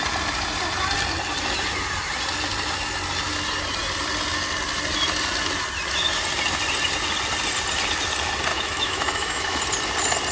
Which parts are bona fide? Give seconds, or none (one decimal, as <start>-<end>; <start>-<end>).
0.0-8.5; 9.6-10.3

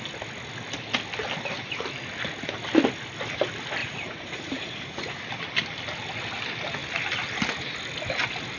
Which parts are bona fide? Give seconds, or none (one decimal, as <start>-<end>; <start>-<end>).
0.0-3.8; 5.2-8.6

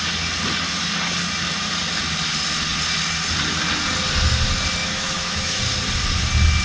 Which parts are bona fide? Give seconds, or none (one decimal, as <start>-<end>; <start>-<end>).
0.0-4.8; 5.6-6.6

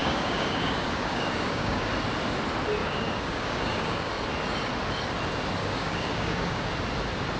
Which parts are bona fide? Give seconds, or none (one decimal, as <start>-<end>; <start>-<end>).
1.9-2.8; 4.1-5.6; 6.7-7.4